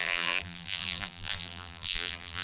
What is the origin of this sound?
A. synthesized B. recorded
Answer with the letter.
A